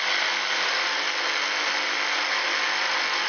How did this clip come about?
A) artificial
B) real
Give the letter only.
B